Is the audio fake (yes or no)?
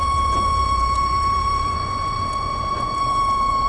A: yes